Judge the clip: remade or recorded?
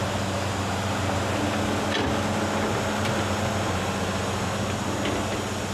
recorded